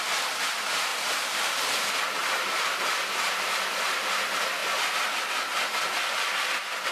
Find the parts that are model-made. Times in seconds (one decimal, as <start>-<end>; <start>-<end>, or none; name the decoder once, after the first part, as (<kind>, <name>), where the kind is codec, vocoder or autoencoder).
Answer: 0.9-1.6 (vocoder, BigVGAN v2)